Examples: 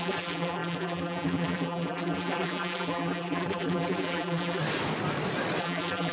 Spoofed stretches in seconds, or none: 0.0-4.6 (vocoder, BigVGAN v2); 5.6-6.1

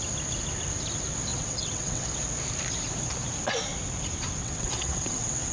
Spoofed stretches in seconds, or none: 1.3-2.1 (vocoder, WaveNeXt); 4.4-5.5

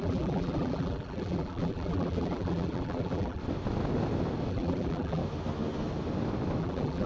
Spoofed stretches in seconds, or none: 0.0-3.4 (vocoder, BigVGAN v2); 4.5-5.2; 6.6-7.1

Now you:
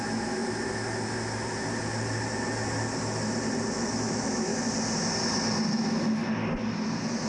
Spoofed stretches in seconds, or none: 0.0-0.4 (autoencoder, DAC-VAE); 3.7-4.5; 5.7-6.2

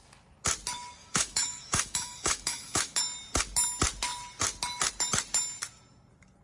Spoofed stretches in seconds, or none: 1.0-3.0 (autoencoder, DAC-VAE)

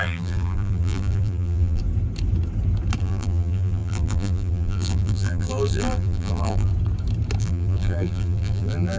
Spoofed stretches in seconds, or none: 0.0-1.8 (vocoder, BigVGAN v2); 3.0-6.7; 7.4-9.0